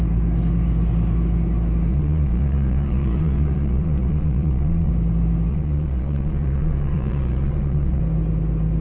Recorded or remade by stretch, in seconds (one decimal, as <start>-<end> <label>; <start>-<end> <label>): 0.0-1.9 recorded; 1.9-4.9 remade; 4.9-5.5 recorded; 5.5-8.0 remade; 8.0-8.8 recorded